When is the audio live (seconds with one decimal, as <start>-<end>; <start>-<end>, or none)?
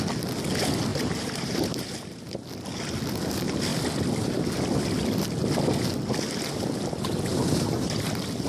0.0-0.9; 2.2-7.3; 8.0-8.5